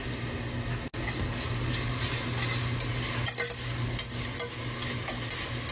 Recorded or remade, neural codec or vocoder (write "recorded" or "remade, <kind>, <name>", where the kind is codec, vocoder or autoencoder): recorded